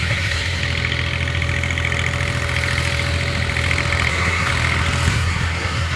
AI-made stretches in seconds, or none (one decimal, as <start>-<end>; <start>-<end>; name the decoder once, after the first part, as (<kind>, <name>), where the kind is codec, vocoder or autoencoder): 0.0-0.6 (codec, SNAC); 4.1-4.5; 5.1-6.0

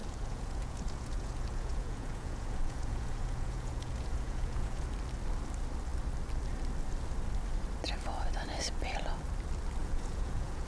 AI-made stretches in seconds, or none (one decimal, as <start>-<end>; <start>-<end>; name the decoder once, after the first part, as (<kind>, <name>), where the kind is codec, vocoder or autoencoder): 0.0-4.9 (vocoder, Vocos); 9.8-10.7

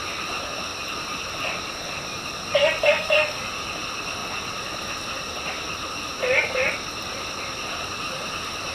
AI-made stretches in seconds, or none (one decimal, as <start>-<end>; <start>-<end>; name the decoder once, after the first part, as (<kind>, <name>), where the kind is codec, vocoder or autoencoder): 2.8-3.4 (codec, SNAC)

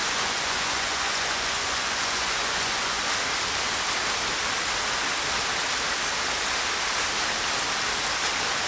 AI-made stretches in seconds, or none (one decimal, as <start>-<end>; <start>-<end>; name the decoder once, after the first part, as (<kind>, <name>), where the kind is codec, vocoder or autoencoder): 0.0-3.0 (vocoder, Vocos)

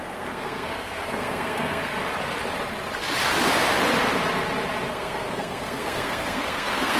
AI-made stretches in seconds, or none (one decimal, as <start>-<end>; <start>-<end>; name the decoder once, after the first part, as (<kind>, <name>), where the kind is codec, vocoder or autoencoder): 0.0-1.9 (codec, SNAC); 4.9-7.0

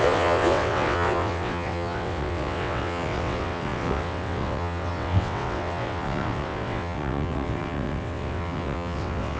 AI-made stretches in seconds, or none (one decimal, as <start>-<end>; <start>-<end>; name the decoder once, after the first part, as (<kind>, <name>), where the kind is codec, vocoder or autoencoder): 0.0-9.4 (vocoder, WaveNeXt)